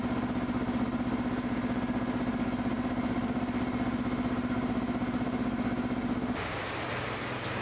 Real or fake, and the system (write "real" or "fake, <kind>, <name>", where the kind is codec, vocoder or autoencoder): real